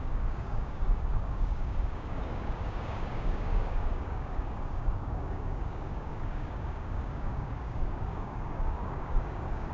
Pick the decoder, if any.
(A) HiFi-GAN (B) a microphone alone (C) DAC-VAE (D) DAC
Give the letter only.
D